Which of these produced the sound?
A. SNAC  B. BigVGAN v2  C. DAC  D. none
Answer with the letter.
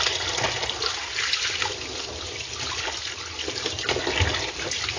D